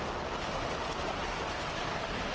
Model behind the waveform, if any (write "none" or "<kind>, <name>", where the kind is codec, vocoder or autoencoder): none